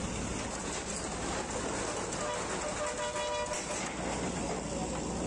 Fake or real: real